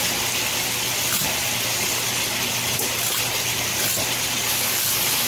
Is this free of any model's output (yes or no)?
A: yes